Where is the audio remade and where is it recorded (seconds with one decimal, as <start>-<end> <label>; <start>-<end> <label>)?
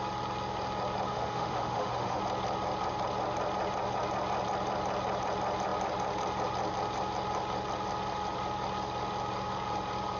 0.0-1.1 recorded; 1.1-2.2 remade; 2.2-10.2 recorded